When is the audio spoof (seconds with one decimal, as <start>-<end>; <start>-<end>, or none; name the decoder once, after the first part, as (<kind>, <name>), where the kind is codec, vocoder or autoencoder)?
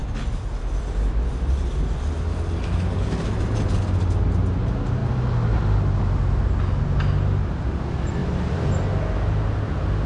8.2-8.7 (vocoder, BigVGAN v2)